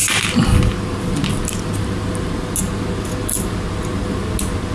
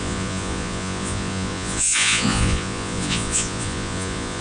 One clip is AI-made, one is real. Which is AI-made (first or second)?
second